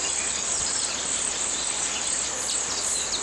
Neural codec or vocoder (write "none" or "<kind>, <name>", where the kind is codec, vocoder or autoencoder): none